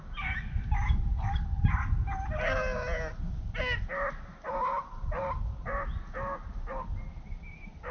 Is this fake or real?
real